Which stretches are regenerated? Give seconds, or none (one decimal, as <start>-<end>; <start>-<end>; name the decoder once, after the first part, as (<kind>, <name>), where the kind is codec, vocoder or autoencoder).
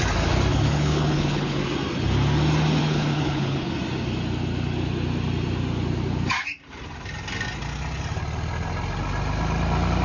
0.5-1.6 (codec, HILCodec); 2.8-3.7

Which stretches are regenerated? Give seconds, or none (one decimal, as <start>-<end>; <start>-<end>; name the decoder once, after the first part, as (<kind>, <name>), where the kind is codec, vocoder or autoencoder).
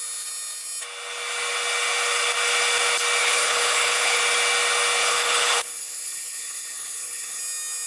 3.2-4.2 (codec, HILCodec); 5.0-7.4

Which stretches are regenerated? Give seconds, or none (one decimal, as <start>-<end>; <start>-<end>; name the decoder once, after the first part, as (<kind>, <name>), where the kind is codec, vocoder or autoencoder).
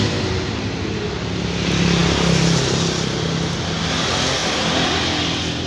none